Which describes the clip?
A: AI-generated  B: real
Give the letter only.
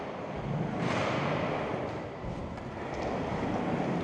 B